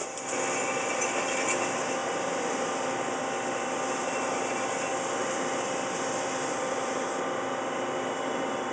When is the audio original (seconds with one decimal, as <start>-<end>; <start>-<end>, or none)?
0.0-2.0; 2.7-8.7

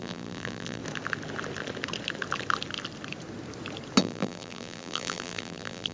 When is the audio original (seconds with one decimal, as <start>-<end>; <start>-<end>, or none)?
0.8-4.0

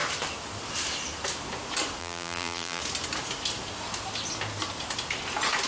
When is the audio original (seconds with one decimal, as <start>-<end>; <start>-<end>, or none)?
0.0-2.0; 2.8-5.7

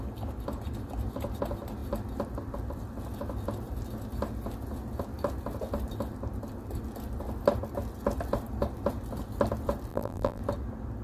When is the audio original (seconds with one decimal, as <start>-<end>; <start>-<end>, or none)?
0.0-9.9; 10.4-11.0

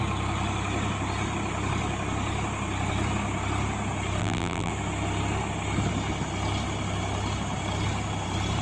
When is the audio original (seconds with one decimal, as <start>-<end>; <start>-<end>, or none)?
0.0-4.2; 4.7-8.6

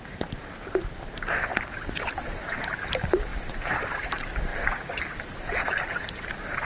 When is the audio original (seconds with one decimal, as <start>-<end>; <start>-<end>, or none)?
4.5-5.4

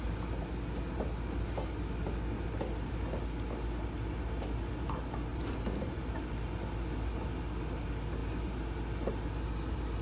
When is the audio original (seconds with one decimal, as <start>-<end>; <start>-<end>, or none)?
0.0-5.3; 6.1-10.0

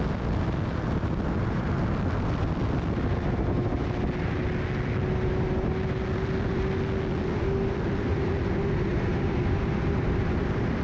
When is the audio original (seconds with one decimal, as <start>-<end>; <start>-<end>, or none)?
0.0-8.9; 9.4-10.8